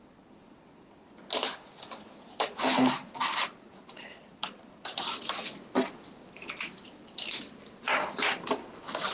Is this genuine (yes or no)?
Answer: yes